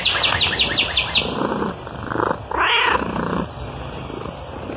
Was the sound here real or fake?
real